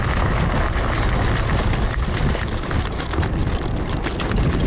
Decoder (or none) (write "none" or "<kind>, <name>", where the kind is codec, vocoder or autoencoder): none